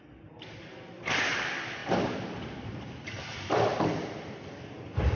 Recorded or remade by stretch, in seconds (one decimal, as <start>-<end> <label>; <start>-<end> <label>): 0.0-5.2 recorded